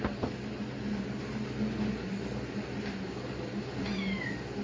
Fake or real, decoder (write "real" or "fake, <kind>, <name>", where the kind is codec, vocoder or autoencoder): real